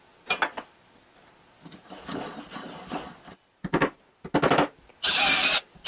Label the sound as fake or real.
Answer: real